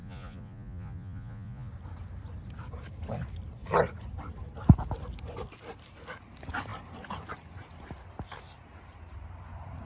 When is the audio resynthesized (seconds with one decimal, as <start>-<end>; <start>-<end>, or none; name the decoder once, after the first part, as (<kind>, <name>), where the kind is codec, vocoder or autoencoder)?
0.0-1.7 (vocoder, Vocos)